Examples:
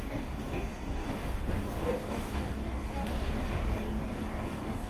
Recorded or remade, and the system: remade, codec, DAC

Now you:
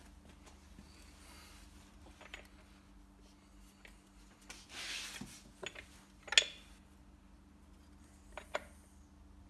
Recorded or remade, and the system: recorded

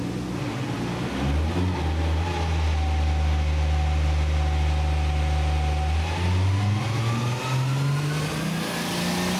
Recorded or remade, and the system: recorded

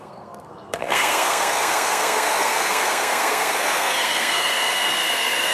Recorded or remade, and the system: remade, codec, SNAC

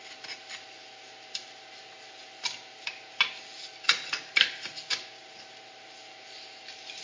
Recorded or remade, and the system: recorded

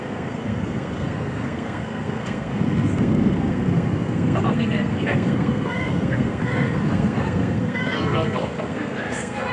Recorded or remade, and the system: remade, codec, SNAC